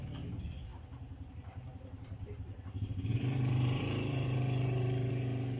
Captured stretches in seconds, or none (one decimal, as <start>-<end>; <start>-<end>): none